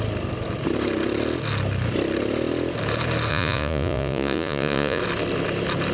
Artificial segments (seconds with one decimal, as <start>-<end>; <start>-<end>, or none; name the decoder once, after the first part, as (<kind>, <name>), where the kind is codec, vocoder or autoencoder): 3.3-5.0 (vocoder, Vocos)